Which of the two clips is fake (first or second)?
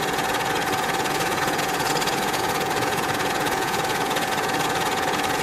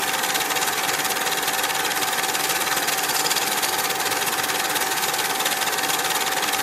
first